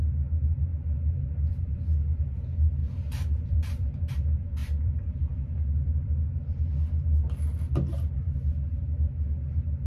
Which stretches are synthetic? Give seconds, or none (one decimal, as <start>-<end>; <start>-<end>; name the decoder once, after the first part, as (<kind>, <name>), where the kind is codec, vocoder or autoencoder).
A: 2.8-4.1 (vocoder, BigVGAN v2); 4.6-6.7